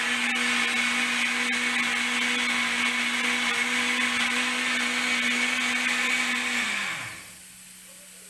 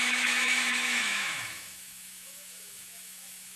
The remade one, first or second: second